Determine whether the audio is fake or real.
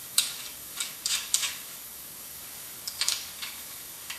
fake